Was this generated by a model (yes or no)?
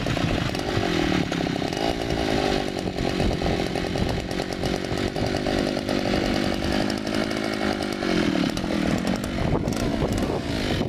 no